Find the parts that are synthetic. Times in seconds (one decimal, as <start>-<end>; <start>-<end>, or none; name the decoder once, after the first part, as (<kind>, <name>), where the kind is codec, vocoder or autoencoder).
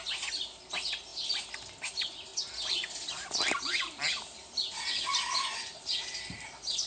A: none